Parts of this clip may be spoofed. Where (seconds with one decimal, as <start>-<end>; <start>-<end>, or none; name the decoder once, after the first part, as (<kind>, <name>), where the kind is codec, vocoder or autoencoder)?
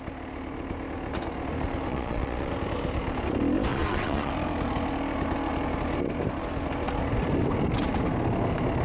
1.9-2.5 (vocoder, Vocos); 3.7-4.3